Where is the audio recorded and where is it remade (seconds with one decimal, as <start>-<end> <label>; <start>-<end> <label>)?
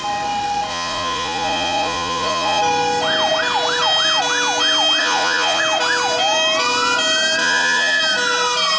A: 0.0-0.7 recorded; 0.7-2.6 remade; 2.6-5.0 recorded; 5.0-5.6 remade; 5.6-7.4 recorded; 7.4-8.0 remade; 8.0-8.8 recorded